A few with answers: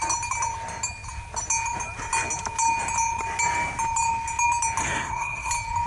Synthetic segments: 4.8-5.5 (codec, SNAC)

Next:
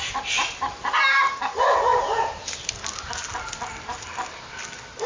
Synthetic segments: none

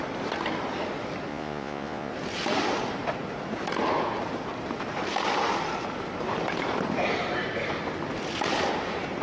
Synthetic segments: 1.3-2.1 (vocoder, Vocos)

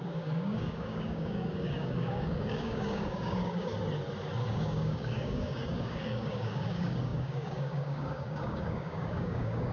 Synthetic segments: 0.0-3.7 (codec, DAC); 4.5-9.7